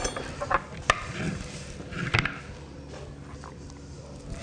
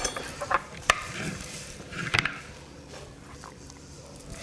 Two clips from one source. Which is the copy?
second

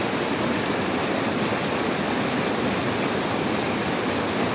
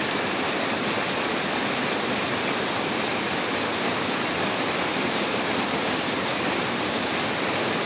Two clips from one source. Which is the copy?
second